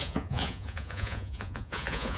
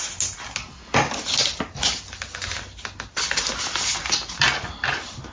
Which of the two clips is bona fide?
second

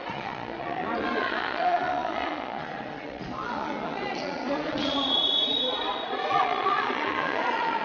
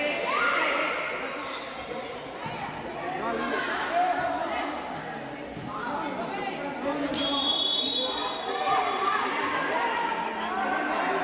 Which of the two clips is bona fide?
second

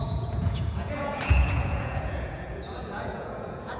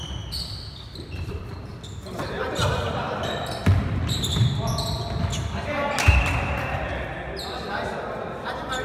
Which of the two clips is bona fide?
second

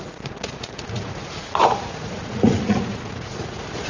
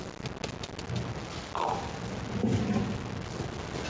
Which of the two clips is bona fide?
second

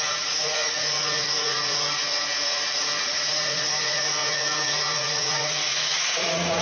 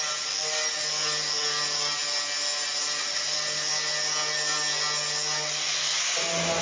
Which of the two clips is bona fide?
second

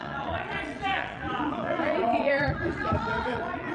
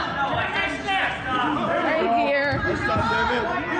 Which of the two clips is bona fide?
second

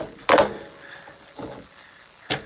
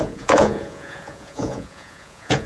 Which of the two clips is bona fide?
first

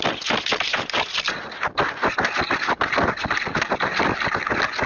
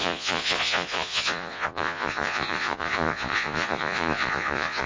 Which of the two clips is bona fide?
first